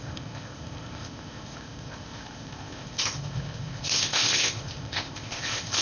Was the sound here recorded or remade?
remade